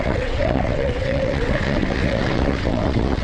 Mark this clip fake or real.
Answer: fake